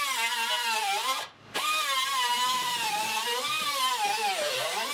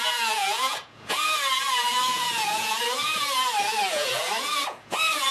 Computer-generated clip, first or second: second